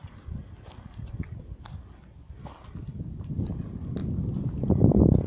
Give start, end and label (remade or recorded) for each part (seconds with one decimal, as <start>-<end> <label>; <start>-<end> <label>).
0.0-5.3 recorded

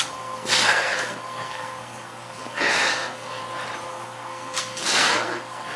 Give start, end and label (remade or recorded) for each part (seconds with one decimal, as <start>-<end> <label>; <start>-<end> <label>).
0.0-3.4 remade; 3.4-3.9 recorded; 3.9-5.8 remade

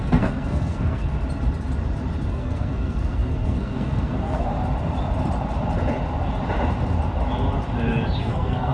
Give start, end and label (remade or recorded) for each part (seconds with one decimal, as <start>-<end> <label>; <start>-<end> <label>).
0.0-1.1 remade; 1.1-2.3 recorded; 2.3-4.5 remade; 4.5-8.2 recorded; 8.2-8.7 remade

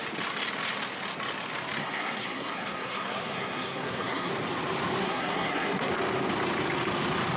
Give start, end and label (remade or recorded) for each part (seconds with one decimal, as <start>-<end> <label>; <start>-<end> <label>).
0.0-1.8 recorded; 1.8-4.3 remade; 4.3-5.0 recorded; 5.0-5.9 remade; 5.9-7.4 recorded

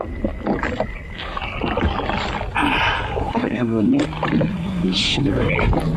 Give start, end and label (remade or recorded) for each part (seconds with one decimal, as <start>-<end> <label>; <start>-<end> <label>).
0.0-3.2 recorded; 3.2-4.0 remade; 4.0-4.5 recorded; 4.5-5.5 remade; 5.5-6.0 recorded

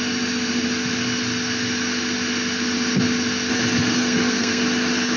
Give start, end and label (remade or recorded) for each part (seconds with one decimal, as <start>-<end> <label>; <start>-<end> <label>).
0.0-3.8 recorded; 3.8-4.6 remade; 4.6-5.2 recorded